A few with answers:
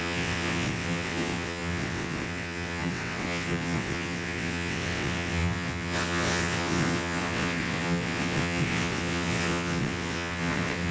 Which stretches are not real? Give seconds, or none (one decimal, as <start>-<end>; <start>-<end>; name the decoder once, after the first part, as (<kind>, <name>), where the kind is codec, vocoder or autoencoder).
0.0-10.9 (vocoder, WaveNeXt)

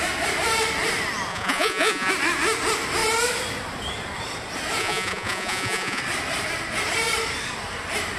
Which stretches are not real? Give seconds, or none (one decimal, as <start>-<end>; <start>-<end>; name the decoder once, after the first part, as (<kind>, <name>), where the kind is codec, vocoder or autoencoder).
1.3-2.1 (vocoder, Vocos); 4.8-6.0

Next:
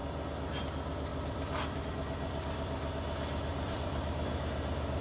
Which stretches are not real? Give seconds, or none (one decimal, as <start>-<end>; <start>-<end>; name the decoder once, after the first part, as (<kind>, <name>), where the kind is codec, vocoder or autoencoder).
1.1-1.9 (vocoder, BigVGAN v2); 3.5-4.0

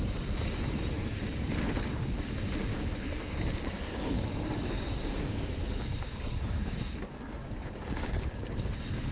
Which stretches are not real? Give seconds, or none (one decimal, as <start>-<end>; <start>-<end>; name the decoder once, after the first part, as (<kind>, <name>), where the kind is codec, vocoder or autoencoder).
2.7-6.2 (codec, DAC); 7.4-8.0

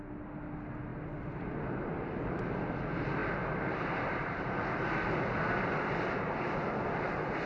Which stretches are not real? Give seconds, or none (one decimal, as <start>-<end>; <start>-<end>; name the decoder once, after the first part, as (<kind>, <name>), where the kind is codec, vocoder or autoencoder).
none

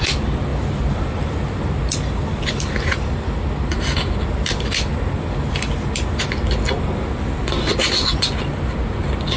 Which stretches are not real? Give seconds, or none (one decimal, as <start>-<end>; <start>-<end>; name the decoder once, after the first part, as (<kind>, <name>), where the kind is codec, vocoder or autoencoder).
0.5-5.5 (vocoder, BigVGAN v2)

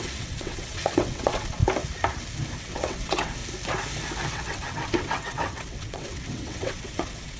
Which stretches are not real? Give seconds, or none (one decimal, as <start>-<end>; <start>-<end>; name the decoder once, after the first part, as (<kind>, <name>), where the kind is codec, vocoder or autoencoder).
0.0-1.6 (vocoder, WaveNeXt); 2.6-3.4; 4.3-7.4